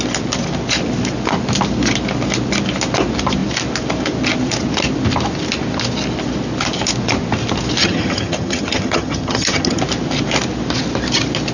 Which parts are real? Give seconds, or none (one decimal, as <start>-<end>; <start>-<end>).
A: 0.0-7.8; 9.8-11.5